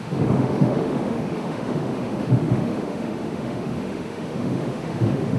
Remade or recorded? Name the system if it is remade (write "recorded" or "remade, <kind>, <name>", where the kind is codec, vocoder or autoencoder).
remade, autoencoder, DAC-VAE